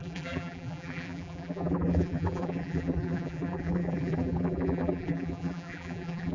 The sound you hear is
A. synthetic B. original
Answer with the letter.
A